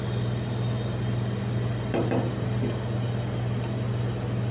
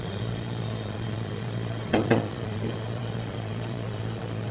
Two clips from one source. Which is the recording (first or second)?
first